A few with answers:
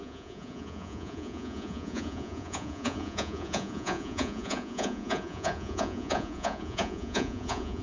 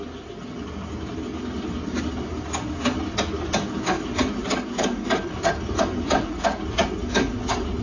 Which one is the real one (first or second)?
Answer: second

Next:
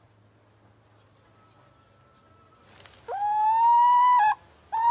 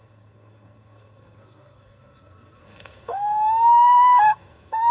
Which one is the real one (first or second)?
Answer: first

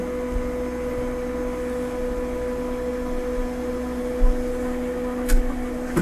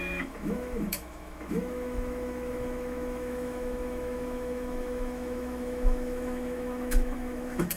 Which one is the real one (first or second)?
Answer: first